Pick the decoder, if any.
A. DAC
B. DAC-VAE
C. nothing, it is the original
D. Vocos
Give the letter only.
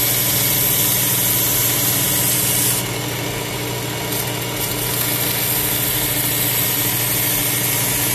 C